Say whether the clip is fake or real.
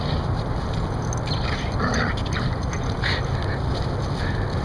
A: real